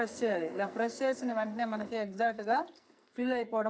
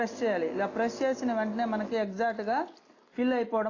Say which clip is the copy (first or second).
first